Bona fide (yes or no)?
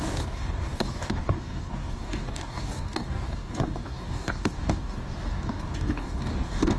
no